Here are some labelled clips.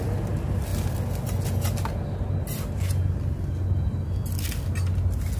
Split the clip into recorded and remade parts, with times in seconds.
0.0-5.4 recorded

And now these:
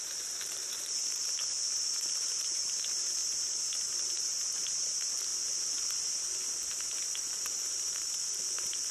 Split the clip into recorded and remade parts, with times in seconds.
0.0-1.4 remade; 1.4-2.0 recorded; 2.0-3.2 remade; 3.2-4.0 recorded; 4.0-5.3 remade; 5.3-7.2 recorded; 7.2-8.9 remade